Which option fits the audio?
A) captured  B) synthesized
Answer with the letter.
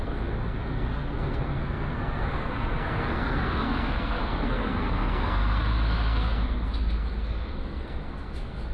B